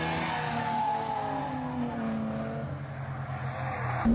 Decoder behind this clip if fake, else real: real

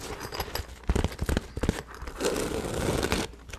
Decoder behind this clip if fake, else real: real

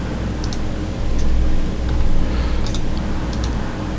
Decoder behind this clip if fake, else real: real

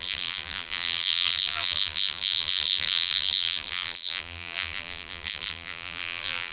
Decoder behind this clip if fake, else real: fake, vocoder, BigVGAN v2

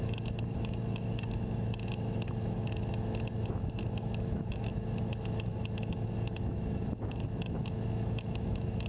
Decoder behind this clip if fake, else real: fake, autoencoder, DAC-VAE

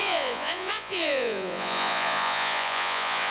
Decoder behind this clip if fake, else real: fake, vocoder, Vocos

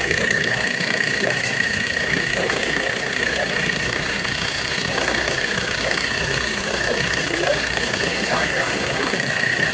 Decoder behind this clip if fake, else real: fake, codec, SNAC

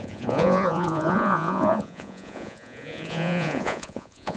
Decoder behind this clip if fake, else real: fake, vocoder, Vocos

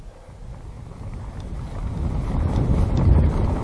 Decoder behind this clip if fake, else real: real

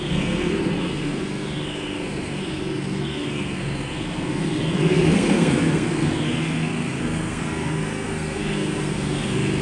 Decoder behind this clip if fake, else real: fake, codec, SNAC